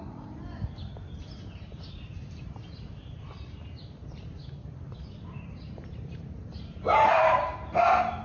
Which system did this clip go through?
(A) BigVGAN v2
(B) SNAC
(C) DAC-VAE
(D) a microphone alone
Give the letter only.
A